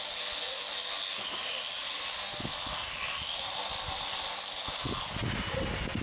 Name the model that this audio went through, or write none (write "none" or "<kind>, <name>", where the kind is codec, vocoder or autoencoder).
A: none